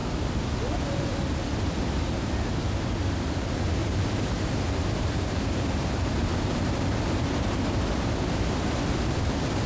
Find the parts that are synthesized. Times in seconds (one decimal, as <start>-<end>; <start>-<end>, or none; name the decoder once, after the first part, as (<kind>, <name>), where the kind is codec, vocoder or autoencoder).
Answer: 3.8-6.9 (vocoder, BigVGAN v2)

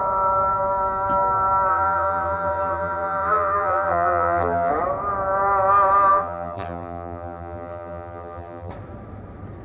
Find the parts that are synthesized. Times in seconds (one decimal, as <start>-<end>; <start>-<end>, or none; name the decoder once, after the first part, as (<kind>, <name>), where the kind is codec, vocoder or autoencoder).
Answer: 1.7-4.7 (vocoder, BigVGAN v2); 6.1-8.7

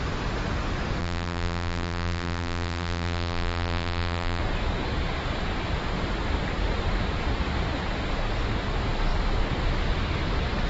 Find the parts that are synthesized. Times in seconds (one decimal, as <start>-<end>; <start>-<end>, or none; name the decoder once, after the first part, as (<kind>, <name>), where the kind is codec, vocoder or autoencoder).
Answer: 1.0-4.4 (vocoder, BigVGAN v2)